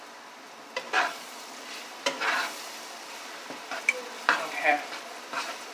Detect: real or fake fake